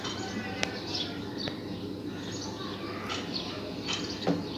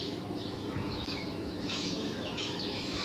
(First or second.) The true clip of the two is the first